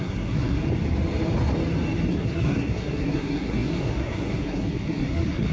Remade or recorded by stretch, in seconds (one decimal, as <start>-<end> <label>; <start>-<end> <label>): 0.0-0.6 remade; 0.6-2.1 recorded; 2.1-5.5 remade